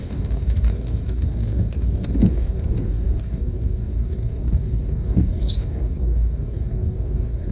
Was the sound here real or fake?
fake